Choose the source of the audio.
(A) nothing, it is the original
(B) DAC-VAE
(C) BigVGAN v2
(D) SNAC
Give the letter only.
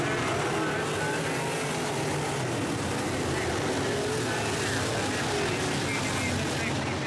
A